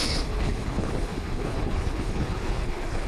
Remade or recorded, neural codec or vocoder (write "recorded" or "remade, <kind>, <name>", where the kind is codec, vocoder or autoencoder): remade, codec, HILCodec